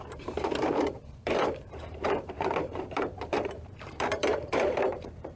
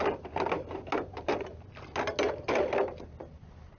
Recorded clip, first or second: second